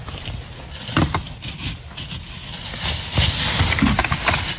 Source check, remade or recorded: recorded